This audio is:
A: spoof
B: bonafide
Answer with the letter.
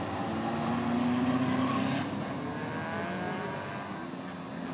B